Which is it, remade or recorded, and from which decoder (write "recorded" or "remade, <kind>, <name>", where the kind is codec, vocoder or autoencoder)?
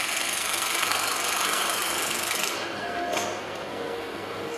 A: remade, codec, SNAC